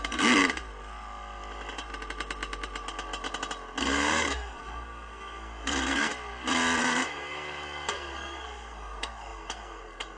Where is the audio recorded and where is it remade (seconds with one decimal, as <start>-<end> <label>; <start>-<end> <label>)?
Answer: 0.0-0.4 remade; 0.4-3.8 recorded; 3.8-6.1 remade; 6.1-6.8 recorded; 6.8-10.2 remade